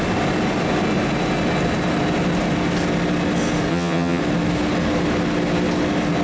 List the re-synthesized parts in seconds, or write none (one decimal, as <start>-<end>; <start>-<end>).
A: 3.7-4.2